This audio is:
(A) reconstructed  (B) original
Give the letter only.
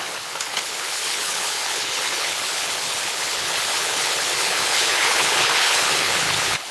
A